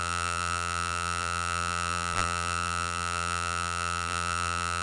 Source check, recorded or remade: remade